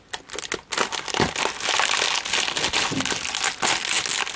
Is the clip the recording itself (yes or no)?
yes